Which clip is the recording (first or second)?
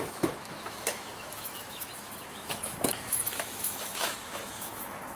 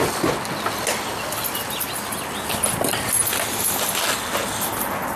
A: second